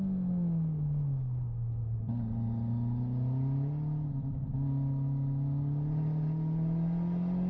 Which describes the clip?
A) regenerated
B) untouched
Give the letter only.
B